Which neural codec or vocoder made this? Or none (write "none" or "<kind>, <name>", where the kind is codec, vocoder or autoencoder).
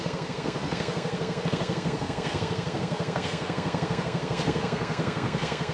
codec, SNAC